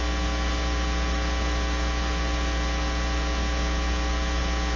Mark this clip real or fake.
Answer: real